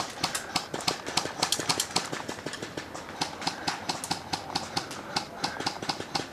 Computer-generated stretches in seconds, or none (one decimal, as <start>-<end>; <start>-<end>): none